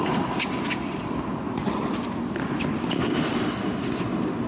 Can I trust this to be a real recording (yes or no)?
yes